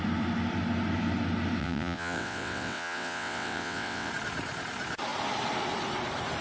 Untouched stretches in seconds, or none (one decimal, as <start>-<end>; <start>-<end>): 0.0-1.6; 4.1-6.4